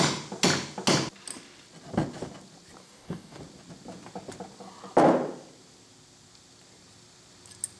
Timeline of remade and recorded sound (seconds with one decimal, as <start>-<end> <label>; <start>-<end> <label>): 0.0-2.8 recorded; 2.8-3.4 remade; 3.4-7.8 recorded